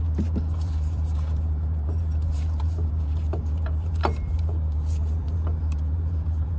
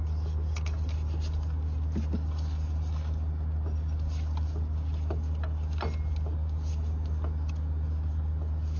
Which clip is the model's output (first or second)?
first